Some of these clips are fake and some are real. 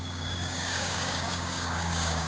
fake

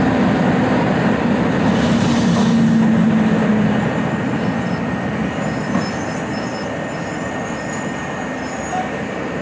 real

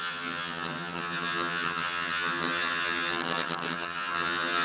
fake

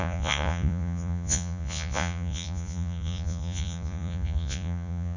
fake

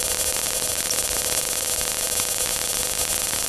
real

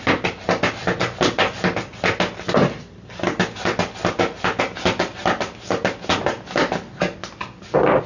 real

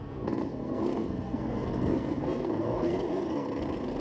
fake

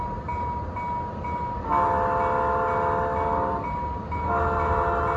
real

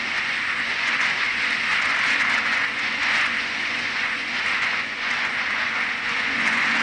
fake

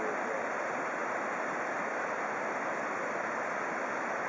real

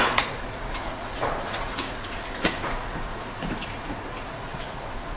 fake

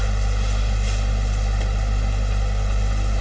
real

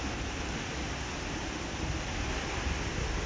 real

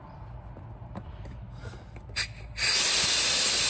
real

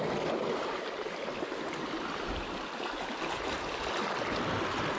real